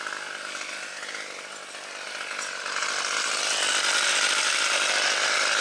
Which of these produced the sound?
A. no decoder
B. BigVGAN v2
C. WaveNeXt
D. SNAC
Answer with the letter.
A